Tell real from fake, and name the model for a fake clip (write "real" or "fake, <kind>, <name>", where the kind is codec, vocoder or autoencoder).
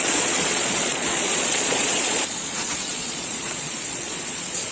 fake, vocoder, Vocos